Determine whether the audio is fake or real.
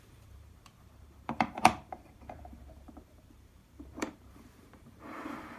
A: fake